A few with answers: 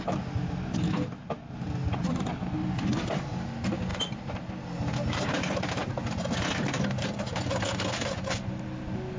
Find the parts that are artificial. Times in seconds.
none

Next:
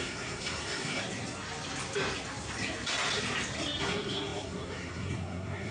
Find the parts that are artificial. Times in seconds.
0.0-1.0 (codec, SNAC); 3.8-5.7